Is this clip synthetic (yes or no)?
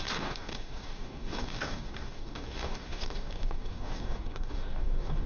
yes